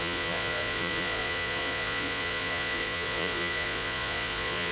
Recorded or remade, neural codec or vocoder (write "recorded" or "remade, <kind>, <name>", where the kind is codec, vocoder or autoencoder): remade, vocoder, Vocos